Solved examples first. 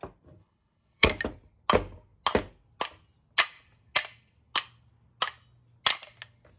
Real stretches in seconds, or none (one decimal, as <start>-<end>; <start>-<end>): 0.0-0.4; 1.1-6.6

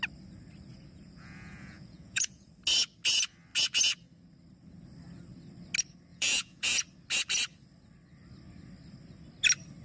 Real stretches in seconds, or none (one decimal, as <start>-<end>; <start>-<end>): 0.0-0.7; 2.5-6.1; 6.8-9.8

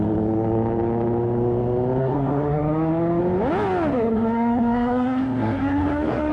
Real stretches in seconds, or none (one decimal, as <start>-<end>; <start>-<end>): 0.0-2.0; 3.2-3.9

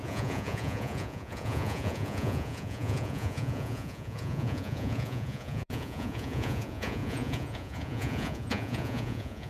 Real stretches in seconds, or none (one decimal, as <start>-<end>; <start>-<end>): none